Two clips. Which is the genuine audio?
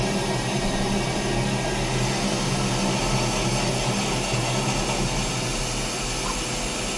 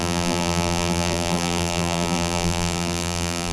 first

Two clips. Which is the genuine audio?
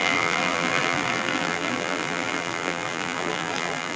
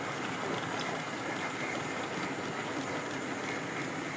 second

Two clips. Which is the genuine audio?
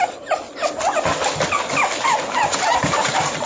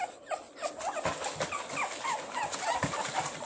second